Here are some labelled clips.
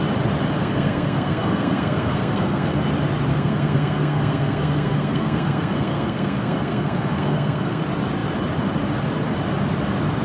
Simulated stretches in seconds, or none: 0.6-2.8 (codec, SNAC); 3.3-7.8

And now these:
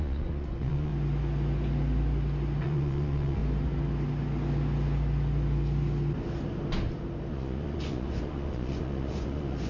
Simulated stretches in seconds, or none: 0.0-0.9 (vocoder, Vocos); 2.6-3.4; 7.3-9.7